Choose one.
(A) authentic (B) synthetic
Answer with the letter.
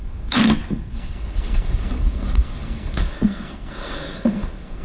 B